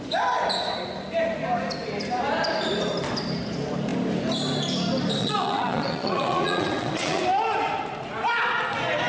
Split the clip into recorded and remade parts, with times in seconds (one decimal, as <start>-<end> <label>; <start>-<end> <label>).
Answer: 0.0-5.2 recorded; 5.2-7.2 remade; 7.2-9.1 recorded